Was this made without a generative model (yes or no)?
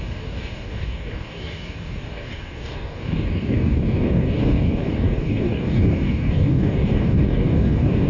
no